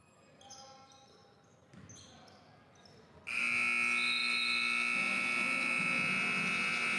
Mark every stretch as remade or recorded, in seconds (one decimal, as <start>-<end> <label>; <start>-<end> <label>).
0.0-7.0 recorded